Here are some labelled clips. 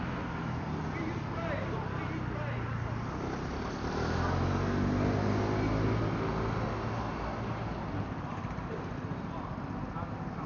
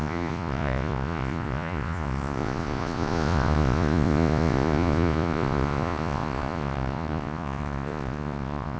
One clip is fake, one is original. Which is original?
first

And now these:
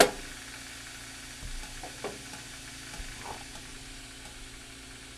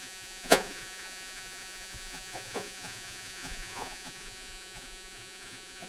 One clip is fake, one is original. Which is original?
first